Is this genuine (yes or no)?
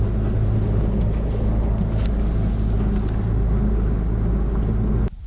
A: yes